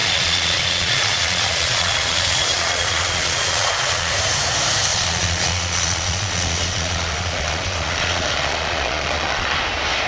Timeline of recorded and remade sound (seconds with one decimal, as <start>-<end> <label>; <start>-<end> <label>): 0.0-4.1 remade; 4.1-4.9 recorded; 4.9-9.6 remade; 9.6-10.1 recorded